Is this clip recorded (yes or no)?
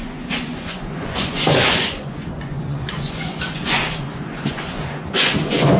no